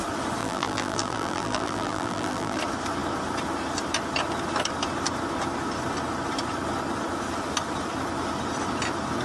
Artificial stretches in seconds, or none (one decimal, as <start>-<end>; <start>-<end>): 0.4-2.6